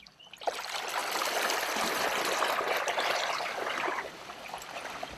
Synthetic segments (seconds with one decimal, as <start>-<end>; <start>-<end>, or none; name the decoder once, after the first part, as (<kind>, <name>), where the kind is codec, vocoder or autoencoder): none